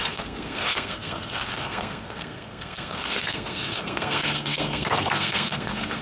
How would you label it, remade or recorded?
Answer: remade